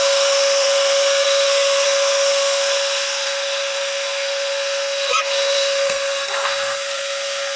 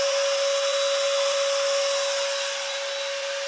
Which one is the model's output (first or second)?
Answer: first